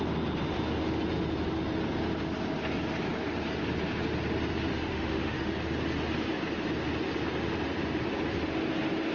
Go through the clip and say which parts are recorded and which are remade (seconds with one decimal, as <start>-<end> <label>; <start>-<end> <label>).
0.0-4.7 recorded; 4.7-5.5 remade; 5.5-9.1 recorded